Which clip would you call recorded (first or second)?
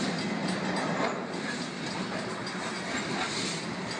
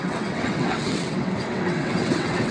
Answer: first